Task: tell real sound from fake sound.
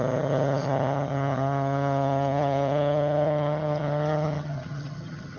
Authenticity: fake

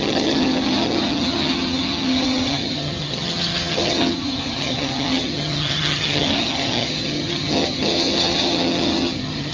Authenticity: fake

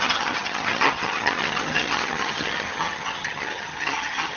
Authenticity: fake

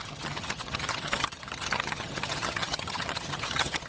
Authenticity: fake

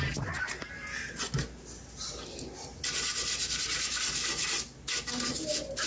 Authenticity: real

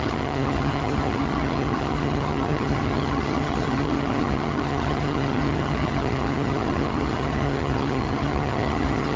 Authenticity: fake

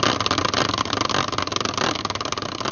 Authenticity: real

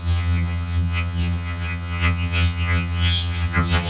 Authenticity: fake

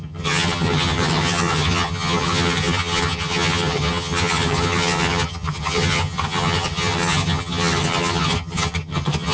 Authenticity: fake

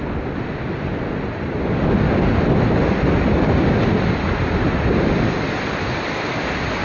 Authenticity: real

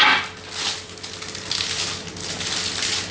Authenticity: real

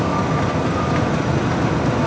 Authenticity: real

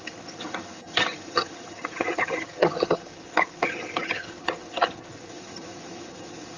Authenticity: fake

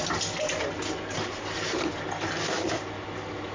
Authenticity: real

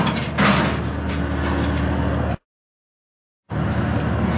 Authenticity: real